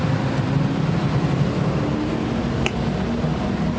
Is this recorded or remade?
recorded